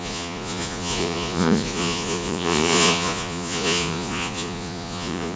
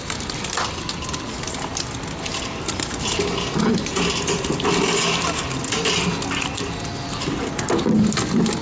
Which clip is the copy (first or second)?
first